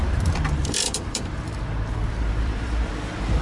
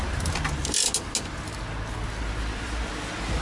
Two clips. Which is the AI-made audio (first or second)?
first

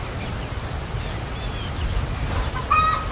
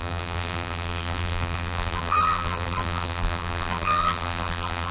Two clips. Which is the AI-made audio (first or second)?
second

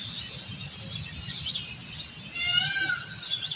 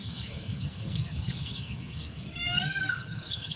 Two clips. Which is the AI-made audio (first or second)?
second